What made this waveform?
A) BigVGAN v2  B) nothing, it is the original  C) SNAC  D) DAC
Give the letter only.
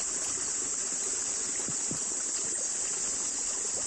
B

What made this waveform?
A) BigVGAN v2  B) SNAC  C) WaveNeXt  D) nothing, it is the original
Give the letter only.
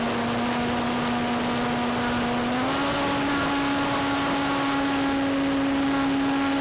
D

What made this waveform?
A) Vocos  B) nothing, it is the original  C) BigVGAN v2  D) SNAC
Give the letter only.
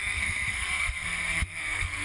D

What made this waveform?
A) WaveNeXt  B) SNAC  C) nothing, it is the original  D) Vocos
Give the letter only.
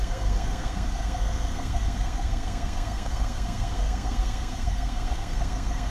B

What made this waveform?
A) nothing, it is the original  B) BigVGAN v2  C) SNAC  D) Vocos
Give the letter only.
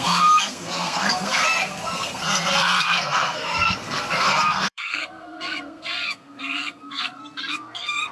C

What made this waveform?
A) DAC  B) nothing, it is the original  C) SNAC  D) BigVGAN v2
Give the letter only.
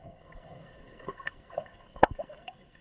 C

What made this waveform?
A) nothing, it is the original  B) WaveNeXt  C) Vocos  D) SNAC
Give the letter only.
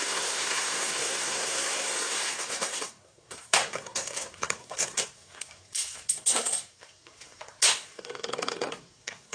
D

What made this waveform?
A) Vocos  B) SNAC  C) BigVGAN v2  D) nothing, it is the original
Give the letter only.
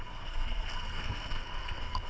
B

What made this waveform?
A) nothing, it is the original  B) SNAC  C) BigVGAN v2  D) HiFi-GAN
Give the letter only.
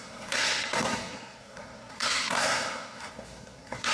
B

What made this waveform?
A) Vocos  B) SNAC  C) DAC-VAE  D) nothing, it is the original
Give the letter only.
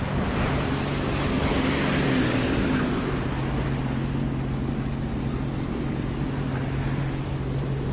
D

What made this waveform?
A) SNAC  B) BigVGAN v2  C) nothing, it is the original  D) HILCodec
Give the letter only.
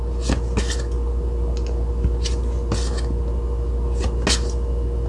C